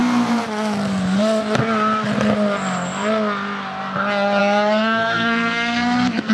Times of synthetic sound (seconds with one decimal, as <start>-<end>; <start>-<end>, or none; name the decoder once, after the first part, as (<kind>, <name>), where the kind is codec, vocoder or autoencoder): 4.4-6.3 (codec, SNAC)